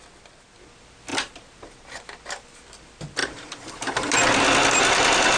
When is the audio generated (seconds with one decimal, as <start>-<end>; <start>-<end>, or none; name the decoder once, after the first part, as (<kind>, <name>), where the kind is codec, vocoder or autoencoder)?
1.1-2.0 (vocoder, BigVGAN v2); 3.2-3.8